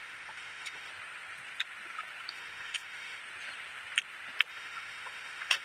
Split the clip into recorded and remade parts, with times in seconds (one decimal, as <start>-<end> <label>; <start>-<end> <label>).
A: 0.0-0.9 remade; 0.9-2.3 recorded; 2.3-3.2 remade; 3.2-4.5 recorded; 4.5-5.6 remade